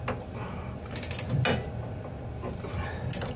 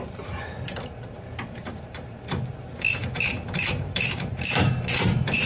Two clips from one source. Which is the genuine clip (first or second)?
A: first